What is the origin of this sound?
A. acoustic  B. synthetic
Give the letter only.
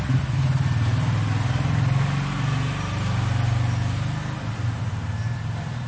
A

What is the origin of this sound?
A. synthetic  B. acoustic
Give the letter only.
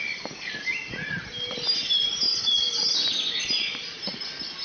B